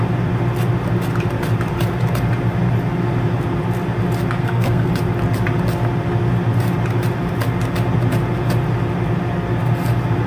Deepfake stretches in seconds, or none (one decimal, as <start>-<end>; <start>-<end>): 4.4-4.9